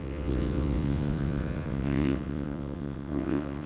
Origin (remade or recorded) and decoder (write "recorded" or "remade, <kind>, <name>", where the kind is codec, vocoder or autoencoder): remade, vocoder, WaveNeXt